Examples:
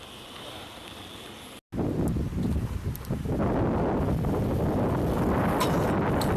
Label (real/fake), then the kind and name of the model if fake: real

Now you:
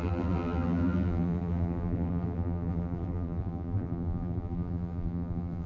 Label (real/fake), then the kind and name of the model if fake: fake, vocoder, BigVGAN v2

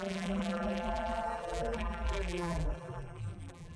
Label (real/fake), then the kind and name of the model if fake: fake, vocoder, BigVGAN v2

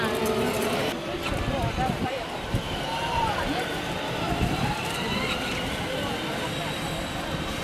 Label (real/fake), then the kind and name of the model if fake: fake, vocoder, BigVGAN v2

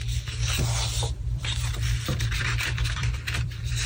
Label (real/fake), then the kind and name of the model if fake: fake, vocoder, BigVGAN v2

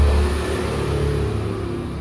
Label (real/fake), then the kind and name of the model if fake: real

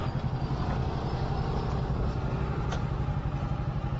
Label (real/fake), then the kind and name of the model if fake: real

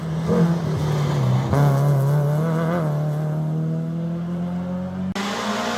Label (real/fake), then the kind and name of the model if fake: real